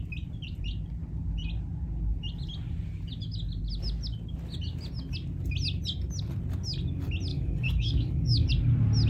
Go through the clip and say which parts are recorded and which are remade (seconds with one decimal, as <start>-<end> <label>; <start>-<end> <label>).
0.0-7.3 recorded; 7.3-8.5 remade; 8.5-9.1 recorded